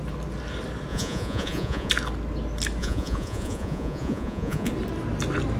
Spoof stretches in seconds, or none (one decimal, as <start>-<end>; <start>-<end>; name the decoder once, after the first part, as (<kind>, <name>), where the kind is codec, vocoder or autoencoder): 0.9-1.9 (vocoder, Vocos); 2.8-4.7